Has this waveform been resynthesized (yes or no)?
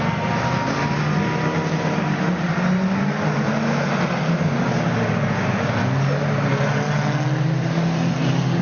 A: no